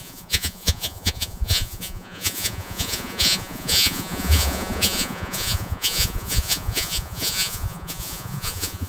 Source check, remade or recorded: remade